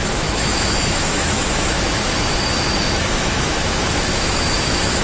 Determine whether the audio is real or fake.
fake